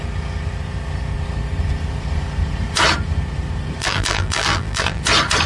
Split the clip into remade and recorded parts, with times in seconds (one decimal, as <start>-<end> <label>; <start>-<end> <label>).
0.0-3.8 recorded; 3.8-5.0 remade; 5.0-5.5 recorded